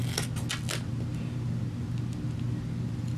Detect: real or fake real